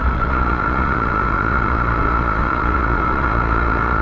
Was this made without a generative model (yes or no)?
no